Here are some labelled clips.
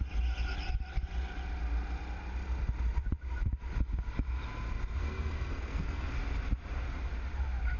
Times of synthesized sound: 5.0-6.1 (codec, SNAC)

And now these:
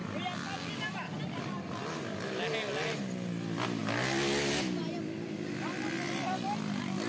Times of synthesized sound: none

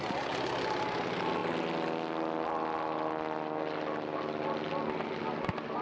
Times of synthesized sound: none

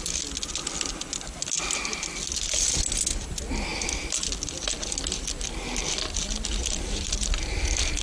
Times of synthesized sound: none

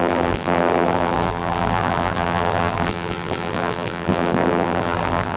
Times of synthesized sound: 0.0-5.4 (vocoder, BigVGAN v2)

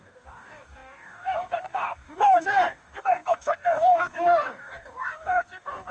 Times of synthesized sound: 0.0-5.9 (codec, DAC)

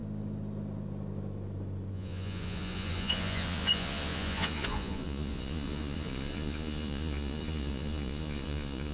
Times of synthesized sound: 1.9-8.9 (vocoder, Vocos)